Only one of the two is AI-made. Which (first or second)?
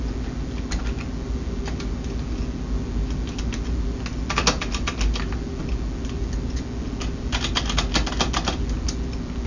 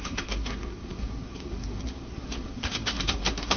second